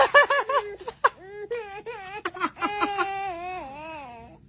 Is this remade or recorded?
recorded